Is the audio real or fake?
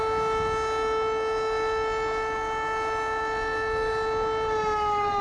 real